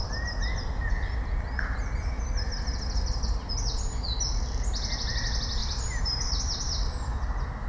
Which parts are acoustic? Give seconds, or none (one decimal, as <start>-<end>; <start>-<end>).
0.0-5.6; 6.4-7.7